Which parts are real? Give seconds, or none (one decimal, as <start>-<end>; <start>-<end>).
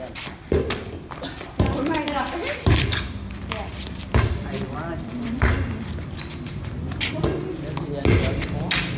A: 0.0-2.4; 5.5-9.0